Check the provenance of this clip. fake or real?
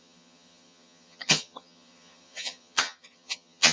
fake